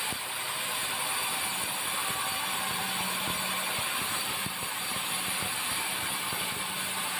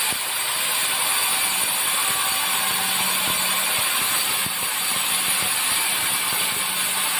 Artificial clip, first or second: first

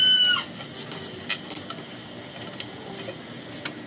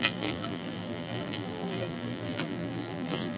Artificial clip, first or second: second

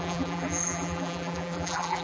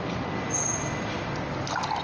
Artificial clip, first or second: first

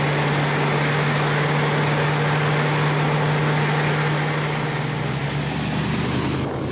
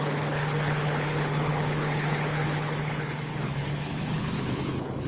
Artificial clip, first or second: second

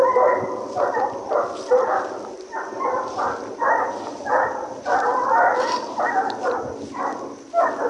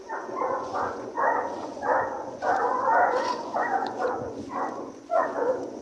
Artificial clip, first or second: second